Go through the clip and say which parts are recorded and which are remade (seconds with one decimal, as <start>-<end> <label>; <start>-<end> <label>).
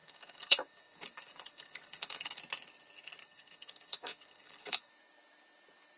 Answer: 0.0-2.4 remade; 2.4-3.2 recorded; 3.2-4.9 remade; 4.9-6.0 recorded